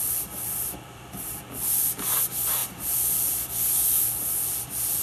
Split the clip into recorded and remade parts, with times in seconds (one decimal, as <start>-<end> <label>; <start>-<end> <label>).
0.0-1.9 remade; 1.9-2.6 recorded; 2.6-5.0 remade